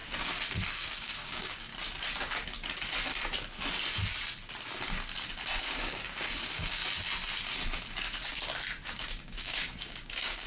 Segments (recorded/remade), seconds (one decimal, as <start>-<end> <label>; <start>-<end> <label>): 0.0-0.7 recorded; 0.7-1.7 remade; 1.7-5.6 recorded; 5.6-6.8 remade; 6.8-8.9 recorded; 8.9-10.5 remade